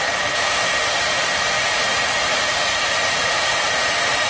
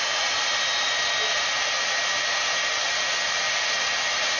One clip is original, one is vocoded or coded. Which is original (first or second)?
second